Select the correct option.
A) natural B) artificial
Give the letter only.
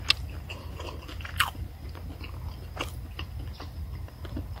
A